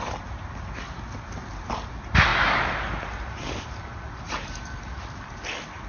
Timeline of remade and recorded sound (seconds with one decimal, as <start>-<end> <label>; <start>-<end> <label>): 0.0-5.9 recorded